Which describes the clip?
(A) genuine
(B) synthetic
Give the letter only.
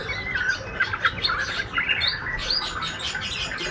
A